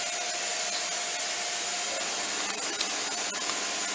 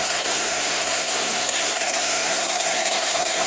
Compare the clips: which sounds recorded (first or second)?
first